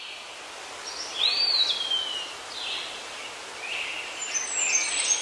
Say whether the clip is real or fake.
real